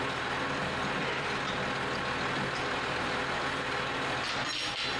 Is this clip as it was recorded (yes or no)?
yes